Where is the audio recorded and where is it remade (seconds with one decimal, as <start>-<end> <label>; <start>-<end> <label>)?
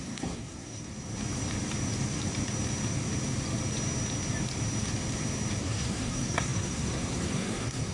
0.0-0.9 remade; 0.9-5.6 recorded; 5.6-7.9 remade